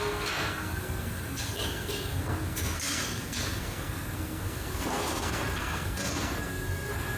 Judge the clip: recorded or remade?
remade